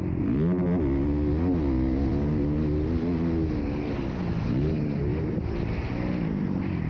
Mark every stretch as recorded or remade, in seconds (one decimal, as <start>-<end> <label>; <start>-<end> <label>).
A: 0.0-6.9 recorded